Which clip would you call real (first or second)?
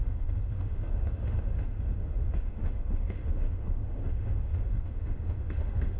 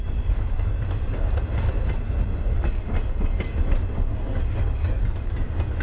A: second